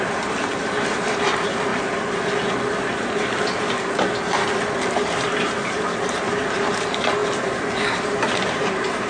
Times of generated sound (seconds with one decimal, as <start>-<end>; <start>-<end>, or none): 0.0-1.7; 4.9-7.2; 8.0-9.1